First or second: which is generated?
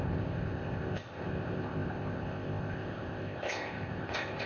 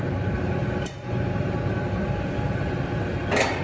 first